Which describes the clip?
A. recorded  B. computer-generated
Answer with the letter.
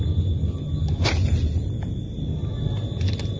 A